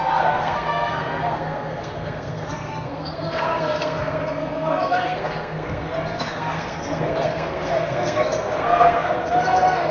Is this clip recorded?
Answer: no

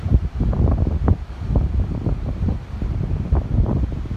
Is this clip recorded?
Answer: no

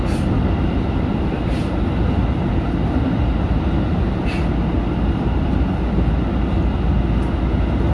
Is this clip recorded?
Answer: yes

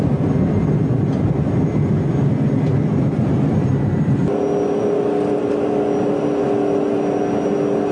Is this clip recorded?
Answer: yes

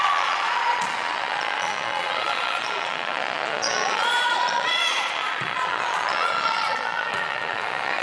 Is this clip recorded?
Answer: no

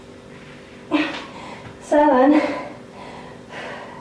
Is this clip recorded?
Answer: no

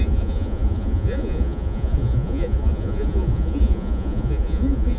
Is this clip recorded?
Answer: no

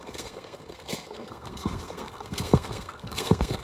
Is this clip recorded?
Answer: no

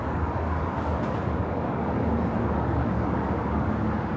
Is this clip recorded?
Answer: no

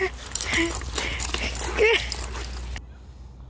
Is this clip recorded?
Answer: yes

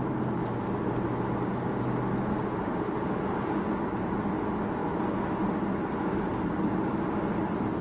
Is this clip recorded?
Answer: yes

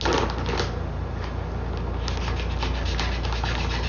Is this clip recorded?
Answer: yes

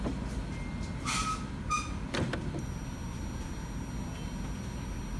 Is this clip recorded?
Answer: yes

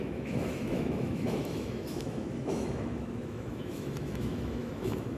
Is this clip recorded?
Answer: no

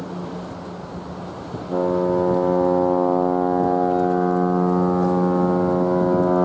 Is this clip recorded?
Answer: yes